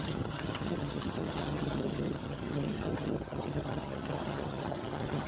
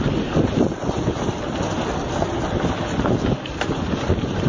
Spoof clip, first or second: first